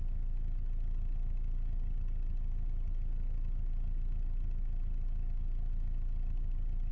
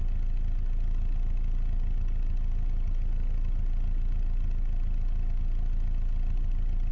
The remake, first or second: second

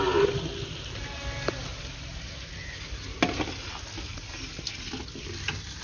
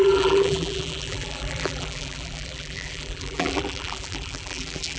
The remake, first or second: second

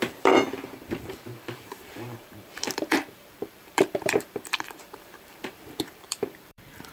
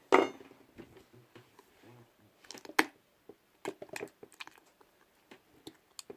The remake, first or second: first